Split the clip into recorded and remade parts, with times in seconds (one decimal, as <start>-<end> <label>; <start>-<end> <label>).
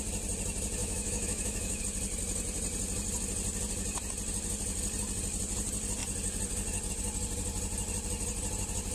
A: 0.0-0.8 recorded; 0.8-1.8 remade; 1.8-8.9 recorded